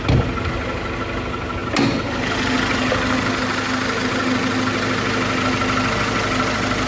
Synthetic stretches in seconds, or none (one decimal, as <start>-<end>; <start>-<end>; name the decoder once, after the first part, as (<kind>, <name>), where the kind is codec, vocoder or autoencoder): none